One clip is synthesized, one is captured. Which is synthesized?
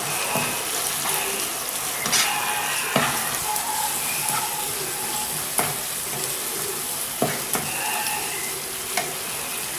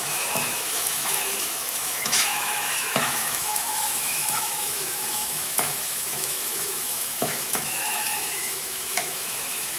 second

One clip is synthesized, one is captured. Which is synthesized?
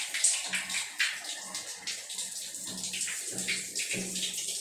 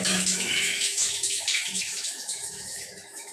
second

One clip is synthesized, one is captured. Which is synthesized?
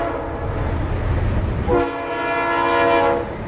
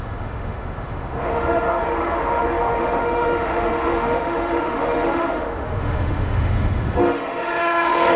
second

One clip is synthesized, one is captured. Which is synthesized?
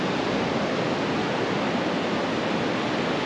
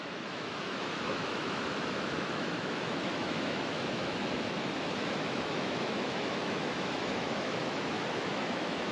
second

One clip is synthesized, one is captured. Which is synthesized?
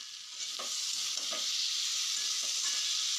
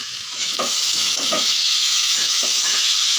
second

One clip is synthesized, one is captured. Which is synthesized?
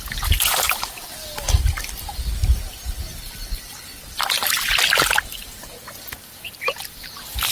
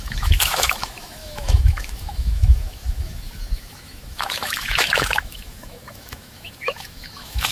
second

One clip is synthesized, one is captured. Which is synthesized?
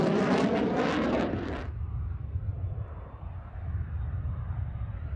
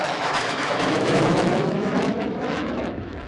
second